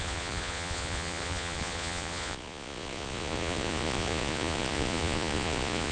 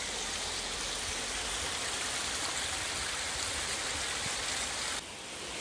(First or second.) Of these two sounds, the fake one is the first